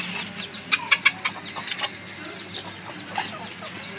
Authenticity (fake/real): real